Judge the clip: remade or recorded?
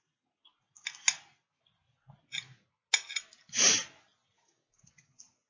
recorded